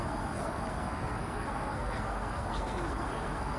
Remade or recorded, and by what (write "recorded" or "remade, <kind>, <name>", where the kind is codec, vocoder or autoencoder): remade, codec, SNAC